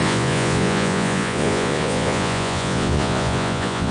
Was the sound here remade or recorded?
remade